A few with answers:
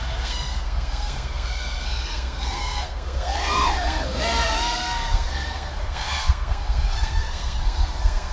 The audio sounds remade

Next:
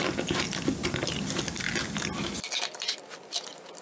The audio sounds recorded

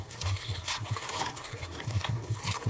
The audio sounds remade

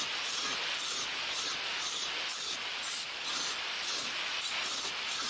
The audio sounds recorded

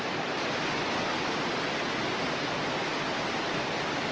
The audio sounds recorded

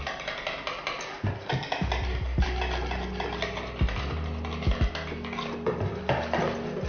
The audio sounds recorded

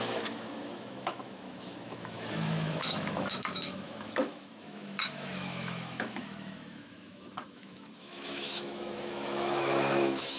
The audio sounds remade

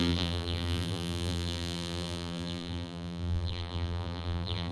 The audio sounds remade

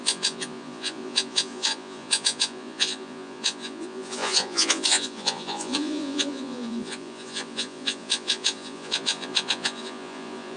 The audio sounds remade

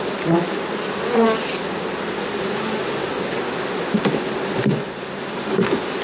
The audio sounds recorded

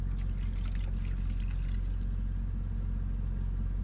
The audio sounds recorded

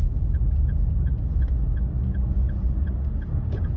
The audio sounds recorded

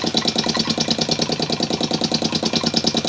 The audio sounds recorded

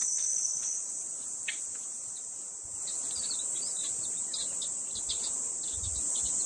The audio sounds recorded